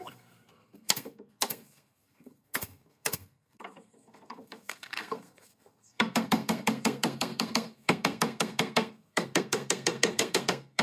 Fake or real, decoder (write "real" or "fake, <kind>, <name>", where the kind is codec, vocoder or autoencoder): fake, codec, SNAC